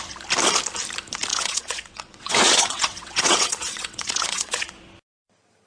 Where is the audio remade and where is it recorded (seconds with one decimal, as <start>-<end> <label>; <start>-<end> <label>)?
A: 0.0-1.3 recorded; 1.3-4.7 remade; 4.7-5.7 recorded

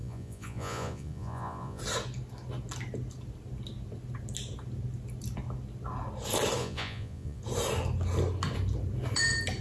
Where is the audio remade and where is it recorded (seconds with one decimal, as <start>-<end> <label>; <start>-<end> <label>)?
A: 0.0-1.8 remade; 1.8-6.6 recorded; 6.6-7.4 remade; 7.4-9.6 recorded

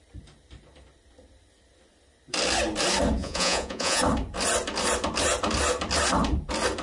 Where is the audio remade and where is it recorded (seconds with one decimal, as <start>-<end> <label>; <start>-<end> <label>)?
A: 0.0-3.2 recorded; 3.2-4.0 remade; 4.0-6.8 recorded

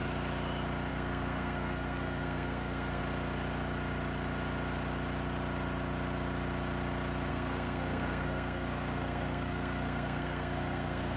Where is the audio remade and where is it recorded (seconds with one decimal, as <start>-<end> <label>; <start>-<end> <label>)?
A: 0.0-0.9 recorded; 0.9-3.0 remade; 3.0-7.3 recorded; 7.3-11.2 remade

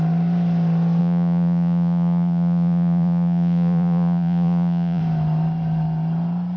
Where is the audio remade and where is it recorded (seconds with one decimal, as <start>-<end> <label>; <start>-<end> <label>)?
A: 0.0-1.0 recorded; 1.0-5.0 remade; 5.0-6.6 recorded

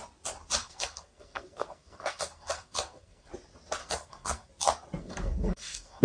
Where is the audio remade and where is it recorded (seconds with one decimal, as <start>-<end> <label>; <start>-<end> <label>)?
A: 0.0-0.6 recorded; 0.6-3.3 remade; 3.3-3.8 recorded; 3.8-4.5 remade; 4.5-5.0 recorded; 5.0-6.0 remade

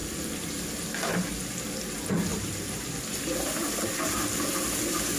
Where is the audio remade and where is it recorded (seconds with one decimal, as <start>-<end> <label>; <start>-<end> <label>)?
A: 0.0-2.3 recorded; 2.3-3.0 remade; 3.0-5.2 recorded